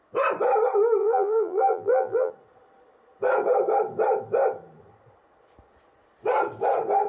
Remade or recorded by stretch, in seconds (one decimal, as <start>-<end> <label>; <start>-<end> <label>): 0.0-1.0 recorded; 1.0-2.3 remade; 2.3-7.1 recorded

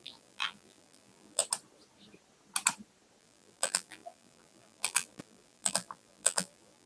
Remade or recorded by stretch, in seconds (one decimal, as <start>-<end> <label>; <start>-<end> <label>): 0.0-1.4 remade; 1.4-3.2 recorded; 3.2-6.9 remade

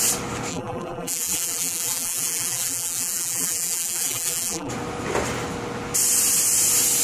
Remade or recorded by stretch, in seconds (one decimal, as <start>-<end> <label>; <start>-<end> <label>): 0.0-0.5 recorded; 0.5-4.7 remade; 4.7-7.0 recorded

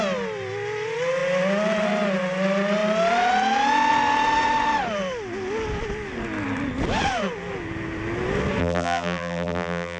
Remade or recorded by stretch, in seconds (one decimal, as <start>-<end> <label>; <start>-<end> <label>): 0.0-8.6 recorded; 8.6-10.0 remade

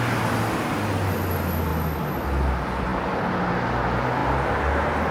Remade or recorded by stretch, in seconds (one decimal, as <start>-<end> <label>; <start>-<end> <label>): 0.0-5.1 recorded

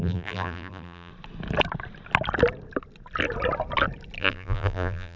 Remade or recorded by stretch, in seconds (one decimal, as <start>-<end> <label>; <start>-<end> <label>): 0.0-1.1 remade; 1.1-4.2 recorded; 4.2-5.2 remade